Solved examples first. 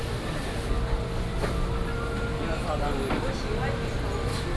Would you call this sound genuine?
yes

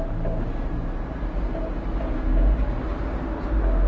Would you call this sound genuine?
yes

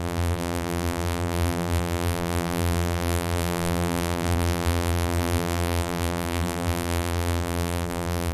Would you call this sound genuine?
no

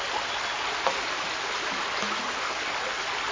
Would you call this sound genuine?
yes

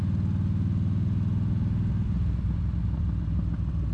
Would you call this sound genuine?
yes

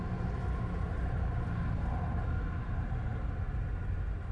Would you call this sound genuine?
yes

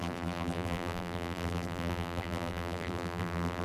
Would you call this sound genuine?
no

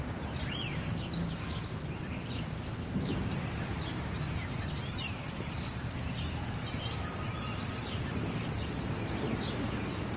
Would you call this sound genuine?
no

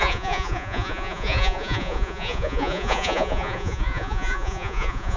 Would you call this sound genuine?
no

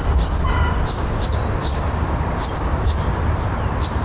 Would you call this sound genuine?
yes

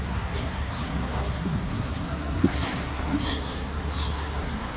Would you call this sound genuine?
no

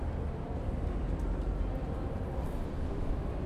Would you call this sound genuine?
yes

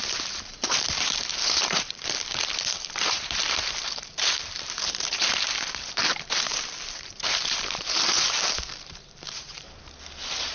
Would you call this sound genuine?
no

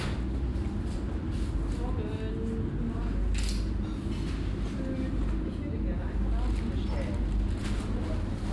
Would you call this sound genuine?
yes